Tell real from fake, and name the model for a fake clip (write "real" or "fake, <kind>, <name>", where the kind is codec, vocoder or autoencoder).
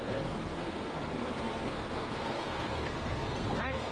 fake, codec, SNAC